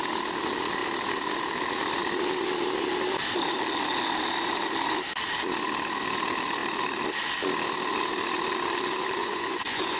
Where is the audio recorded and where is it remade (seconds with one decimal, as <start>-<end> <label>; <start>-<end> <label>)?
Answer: 0.0-9.2 recorded; 9.2-10.0 remade

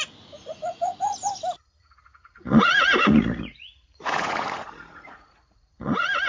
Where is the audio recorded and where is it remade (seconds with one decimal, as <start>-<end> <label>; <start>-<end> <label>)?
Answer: 0.0-1.3 remade; 1.3-1.8 recorded; 1.8-6.3 remade

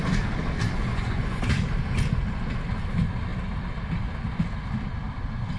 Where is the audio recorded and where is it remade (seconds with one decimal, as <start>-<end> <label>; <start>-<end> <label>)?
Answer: 0.0-0.9 recorded; 0.9-1.4 remade; 1.4-5.6 recorded

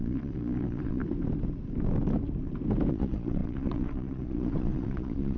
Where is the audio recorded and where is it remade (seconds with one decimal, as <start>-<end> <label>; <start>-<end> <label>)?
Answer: 0.0-1.0 remade; 1.0-2.9 recorded; 2.9-5.4 remade

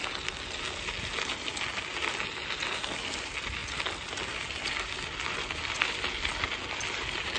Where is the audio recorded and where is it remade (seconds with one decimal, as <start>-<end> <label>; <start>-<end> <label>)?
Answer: 0.0-7.4 recorded

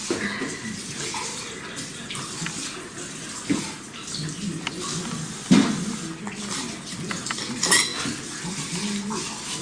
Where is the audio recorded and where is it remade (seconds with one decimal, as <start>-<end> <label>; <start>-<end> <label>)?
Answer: 0.0-9.6 recorded

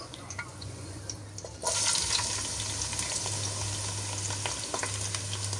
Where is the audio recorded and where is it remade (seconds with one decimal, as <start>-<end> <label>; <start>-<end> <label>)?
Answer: 0.0-1.0 remade; 1.0-5.6 recorded